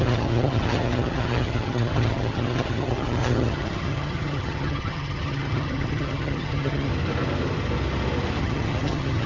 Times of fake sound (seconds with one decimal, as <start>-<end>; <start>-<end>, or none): 0.0-6.9; 8.4-9.3